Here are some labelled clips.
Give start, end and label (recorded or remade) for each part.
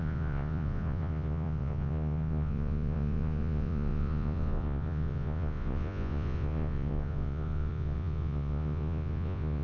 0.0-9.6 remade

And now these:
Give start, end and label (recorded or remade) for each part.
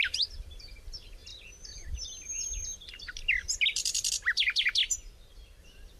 0.0-6.0 remade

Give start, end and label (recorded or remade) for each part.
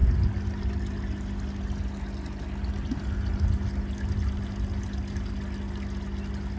0.0-6.6 recorded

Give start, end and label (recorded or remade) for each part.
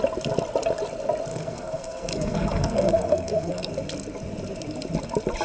0.0-1.3 recorded; 1.3-3.7 remade; 3.7-5.4 recorded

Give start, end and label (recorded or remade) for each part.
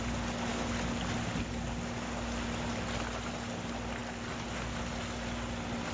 0.0-5.9 recorded